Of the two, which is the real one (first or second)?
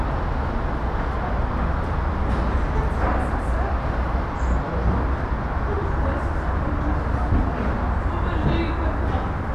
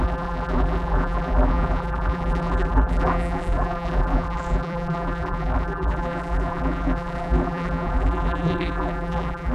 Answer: first